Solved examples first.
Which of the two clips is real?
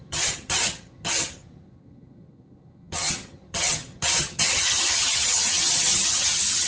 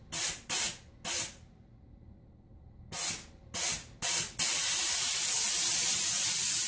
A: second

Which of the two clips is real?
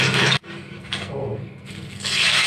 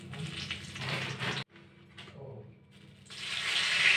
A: second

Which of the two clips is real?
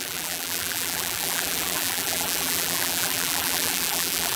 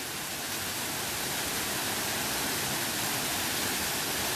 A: second